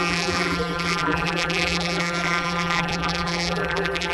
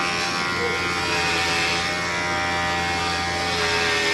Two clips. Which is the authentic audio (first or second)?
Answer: second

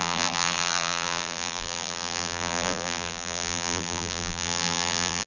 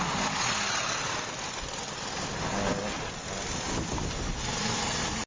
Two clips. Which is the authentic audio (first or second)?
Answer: second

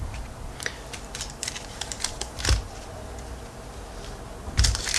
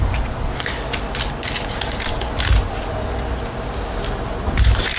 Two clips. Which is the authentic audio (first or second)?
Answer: second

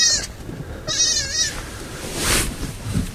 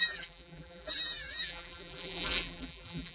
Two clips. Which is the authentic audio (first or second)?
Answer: first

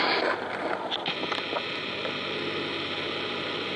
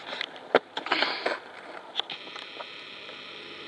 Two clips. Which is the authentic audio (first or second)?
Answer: second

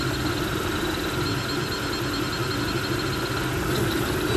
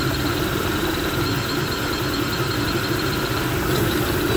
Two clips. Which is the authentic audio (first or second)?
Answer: first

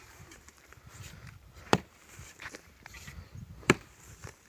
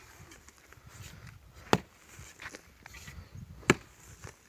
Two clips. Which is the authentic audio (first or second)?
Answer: second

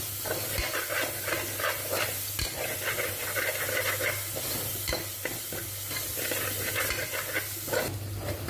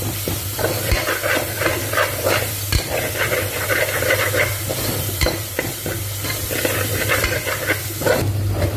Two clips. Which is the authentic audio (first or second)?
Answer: first